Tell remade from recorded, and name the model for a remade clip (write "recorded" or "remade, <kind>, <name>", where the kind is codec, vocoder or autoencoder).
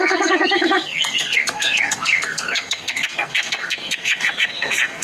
remade, codec, SNAC